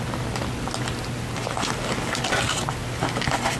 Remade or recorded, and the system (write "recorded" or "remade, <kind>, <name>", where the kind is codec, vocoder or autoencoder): recorded